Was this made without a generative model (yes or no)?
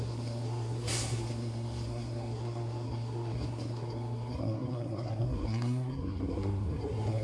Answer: no